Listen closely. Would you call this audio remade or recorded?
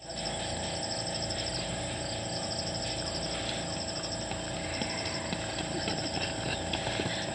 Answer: recorded